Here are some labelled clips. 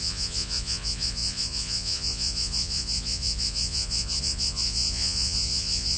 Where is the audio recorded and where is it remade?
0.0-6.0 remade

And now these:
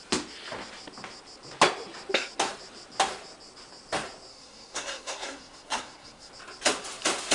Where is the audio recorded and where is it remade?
0.0-4.3 recorded; 4.3-6.3 remade; 6.3-7.3 recorded

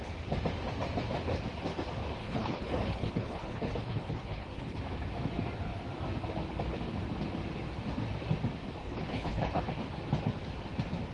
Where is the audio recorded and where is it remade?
0.0-2.2 recorded; 2.2-4.8 remade; 4.8-8.8 recorded; 8.8-9.6 remade; 9.6-11.1 recorded

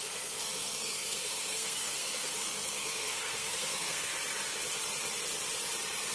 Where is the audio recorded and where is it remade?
0.0-4.1 remade; 4.1-6.1 recorded

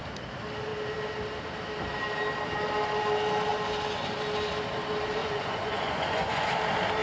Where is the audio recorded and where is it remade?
0.0-5.2 recorded; 5.2-6.5 remade; 6.5-7.0 recorded